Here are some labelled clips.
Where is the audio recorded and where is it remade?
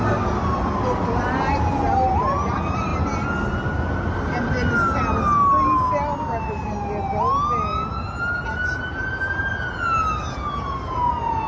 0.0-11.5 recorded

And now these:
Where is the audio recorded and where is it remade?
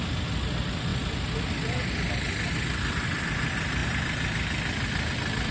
0.0-5.5 recorded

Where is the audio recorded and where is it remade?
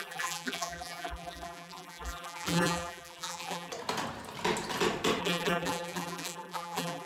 0.0-3.7 remade; 3.7-5.2 recorded; 5.2-7.1 remade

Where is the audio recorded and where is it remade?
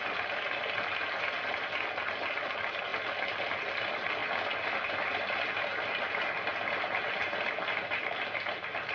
0.0-8.9 recorded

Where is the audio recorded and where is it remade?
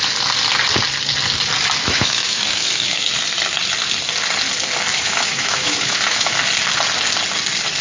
0.0-1.8 recorded; 1.8-3.1 remade; 3.1-4.9 recorded; 4.9-6.3 remade; 6.3-7.8 recorded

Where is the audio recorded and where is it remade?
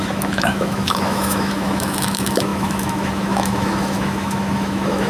0.0-5.1 remade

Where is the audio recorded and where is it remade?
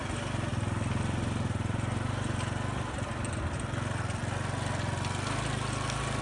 0.0-6.2 recorded